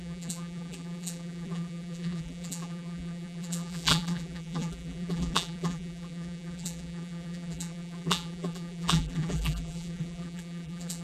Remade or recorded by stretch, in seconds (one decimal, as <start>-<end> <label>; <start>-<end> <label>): 0.0-11.0 remade